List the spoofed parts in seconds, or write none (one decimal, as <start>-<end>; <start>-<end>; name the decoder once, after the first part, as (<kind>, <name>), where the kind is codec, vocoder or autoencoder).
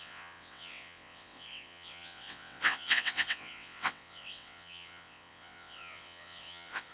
0.0-6.9 (vocoder, WaveNeXt)